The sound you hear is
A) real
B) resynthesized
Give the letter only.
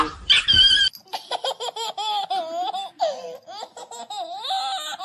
A